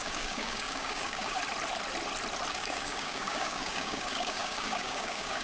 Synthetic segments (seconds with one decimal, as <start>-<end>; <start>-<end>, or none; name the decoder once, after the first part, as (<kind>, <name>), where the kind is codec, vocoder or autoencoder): 0.0-1.4 (codec, DAC); 2.5-5.4